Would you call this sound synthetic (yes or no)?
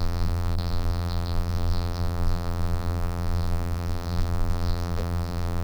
yes